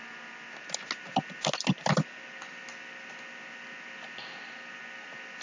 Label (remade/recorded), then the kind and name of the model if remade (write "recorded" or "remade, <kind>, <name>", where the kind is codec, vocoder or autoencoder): recorded